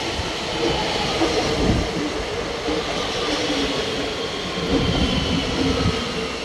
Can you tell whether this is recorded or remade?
recorded